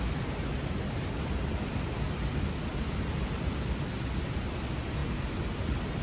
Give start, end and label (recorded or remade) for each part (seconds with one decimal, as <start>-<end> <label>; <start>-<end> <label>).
0.0-6.0 recorded